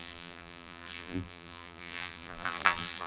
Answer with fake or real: fake